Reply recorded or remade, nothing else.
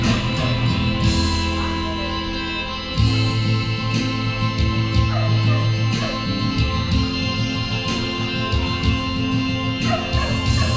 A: recorded